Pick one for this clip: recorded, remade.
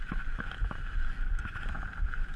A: recorded